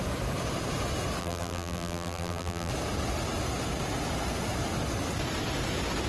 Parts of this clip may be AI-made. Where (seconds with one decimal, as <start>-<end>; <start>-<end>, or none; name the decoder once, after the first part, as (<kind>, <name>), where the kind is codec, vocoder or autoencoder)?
1.2-2.7 (vocoder, BigVGAN v2)